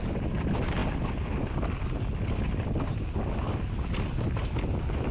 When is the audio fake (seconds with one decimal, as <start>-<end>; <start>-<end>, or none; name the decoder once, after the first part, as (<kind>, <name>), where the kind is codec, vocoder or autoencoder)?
none